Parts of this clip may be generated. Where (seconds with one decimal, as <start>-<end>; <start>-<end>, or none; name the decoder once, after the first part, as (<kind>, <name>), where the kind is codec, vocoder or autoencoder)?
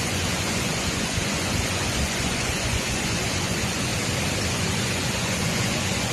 0.0-3.9 (vocoder, Vocos); 4.5-6.1